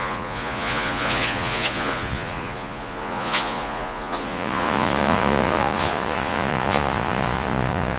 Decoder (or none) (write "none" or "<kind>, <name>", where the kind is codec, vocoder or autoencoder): vocoder, Vocos